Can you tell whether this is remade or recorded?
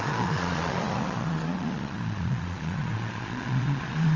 remade